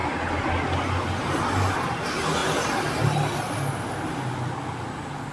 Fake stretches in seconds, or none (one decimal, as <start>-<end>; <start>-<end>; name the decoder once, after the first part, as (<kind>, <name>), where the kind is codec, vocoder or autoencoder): none